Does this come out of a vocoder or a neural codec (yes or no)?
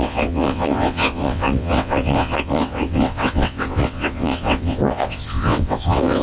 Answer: yes